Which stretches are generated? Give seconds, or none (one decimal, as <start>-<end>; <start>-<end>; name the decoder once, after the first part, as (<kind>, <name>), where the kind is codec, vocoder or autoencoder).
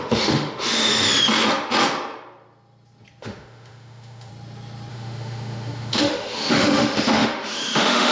0.0-0.9 (autoencoder, DAC-VAE); 3.2-4.3; 4.9-8.1